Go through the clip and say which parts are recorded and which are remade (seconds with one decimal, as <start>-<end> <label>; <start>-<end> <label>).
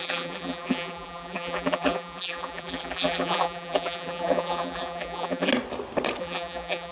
0.0-5.5 remade; 5.5-6.2 recorded; 6.2-6.9 remade